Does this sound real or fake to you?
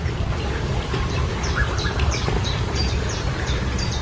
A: fake